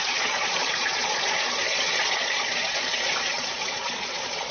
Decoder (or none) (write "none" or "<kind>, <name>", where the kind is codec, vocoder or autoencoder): vocoder, Vocos